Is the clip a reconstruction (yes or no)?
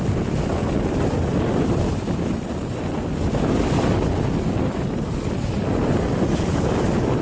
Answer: no